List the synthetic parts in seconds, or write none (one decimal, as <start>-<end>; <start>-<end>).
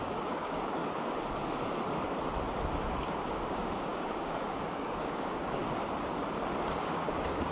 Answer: 0.0-0.8; 3.3-5.6; 6.8-7.5